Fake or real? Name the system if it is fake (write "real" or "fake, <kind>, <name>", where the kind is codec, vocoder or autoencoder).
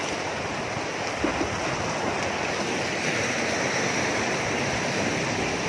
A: real